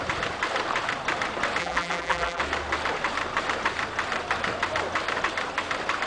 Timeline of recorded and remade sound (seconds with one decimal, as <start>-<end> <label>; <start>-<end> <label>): 0.0-1.6 recorded; 1.6-2.4 remade; 2.4-6.1 recorded